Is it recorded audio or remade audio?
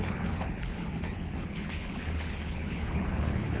remade